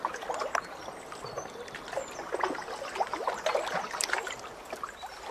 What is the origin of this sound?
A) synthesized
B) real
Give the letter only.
B